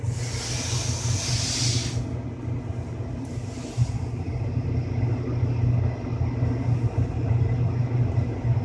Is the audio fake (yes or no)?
no